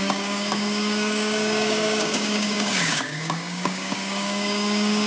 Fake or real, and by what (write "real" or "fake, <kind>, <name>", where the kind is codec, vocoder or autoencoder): fake, codec, DAC